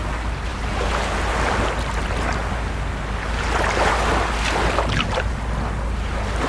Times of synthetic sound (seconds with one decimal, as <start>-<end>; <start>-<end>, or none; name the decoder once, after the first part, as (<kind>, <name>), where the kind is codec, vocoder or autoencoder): none